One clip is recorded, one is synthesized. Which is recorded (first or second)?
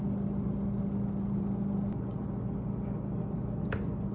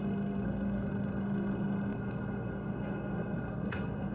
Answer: first